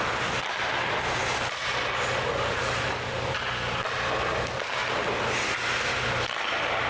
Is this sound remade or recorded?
recorded